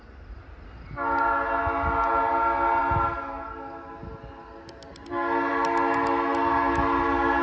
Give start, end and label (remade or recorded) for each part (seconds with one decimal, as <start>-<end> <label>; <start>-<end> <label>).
0.0-7.4 recorded